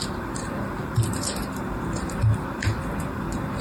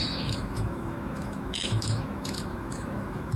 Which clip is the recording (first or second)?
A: first